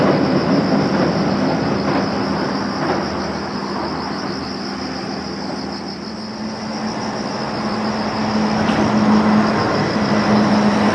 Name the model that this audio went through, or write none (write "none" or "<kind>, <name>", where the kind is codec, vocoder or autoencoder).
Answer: none